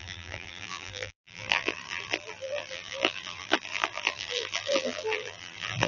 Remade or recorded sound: remade